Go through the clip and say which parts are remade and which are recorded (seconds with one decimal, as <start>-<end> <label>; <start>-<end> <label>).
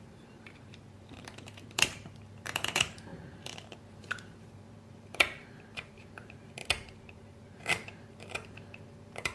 0.0-9.3 remade